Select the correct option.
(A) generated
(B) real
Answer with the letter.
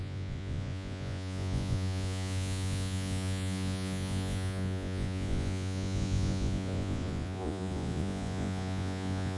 A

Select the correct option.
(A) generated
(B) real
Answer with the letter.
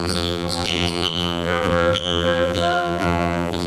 A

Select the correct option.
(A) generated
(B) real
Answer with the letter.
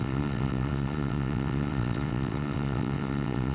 A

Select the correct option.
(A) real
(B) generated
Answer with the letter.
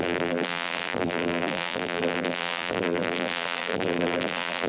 B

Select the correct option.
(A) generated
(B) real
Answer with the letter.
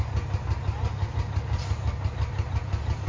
B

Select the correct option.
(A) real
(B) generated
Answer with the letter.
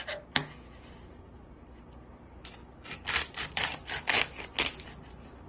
A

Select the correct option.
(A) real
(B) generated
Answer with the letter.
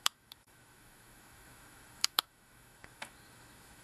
B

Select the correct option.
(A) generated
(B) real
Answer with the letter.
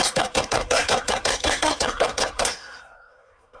A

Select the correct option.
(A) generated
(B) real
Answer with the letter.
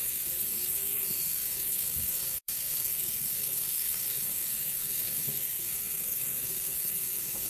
A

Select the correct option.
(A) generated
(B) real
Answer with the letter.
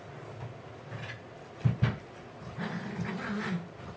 B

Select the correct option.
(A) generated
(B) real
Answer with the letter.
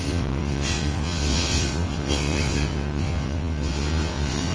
A